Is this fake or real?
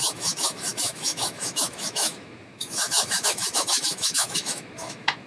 fake